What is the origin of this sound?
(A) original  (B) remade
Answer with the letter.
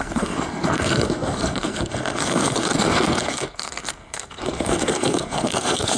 B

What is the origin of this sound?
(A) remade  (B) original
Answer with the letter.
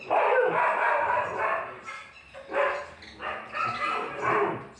B